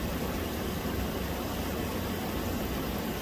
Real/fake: real